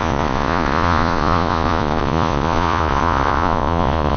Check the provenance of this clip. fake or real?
fake